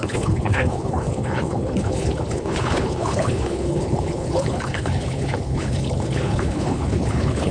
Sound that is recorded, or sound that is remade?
remade